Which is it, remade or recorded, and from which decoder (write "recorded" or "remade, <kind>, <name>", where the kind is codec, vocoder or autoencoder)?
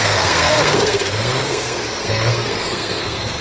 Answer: remade, codec, SNAC